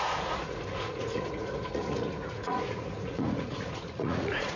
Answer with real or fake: fake